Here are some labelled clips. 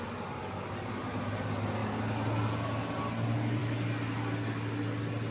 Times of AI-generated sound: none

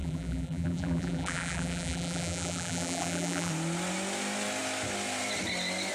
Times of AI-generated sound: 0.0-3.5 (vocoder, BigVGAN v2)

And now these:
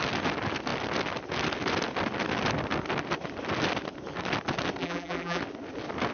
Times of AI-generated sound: 4.8-5.4 (vocoder, BigVGAN v2)

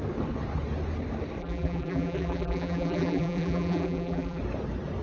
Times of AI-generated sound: 1.4-4.4 (vocoder, BigVGAN v2)